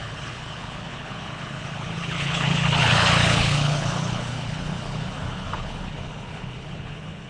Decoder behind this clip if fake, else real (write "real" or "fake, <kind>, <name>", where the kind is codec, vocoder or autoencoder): fake, codec, HILCodec